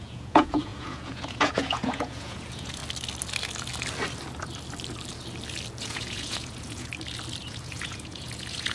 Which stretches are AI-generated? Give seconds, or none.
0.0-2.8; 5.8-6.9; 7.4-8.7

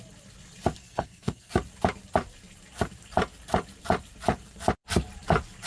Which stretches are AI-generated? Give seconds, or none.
0.8-1.5

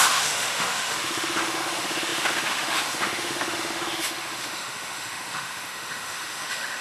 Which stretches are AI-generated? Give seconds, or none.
0.0-6.8